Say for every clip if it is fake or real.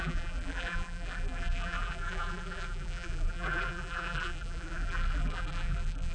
fake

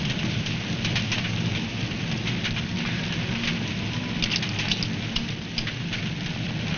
real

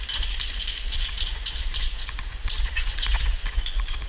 fake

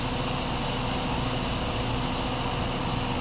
real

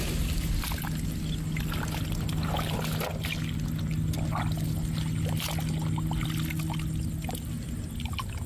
real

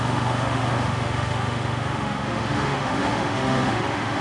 fake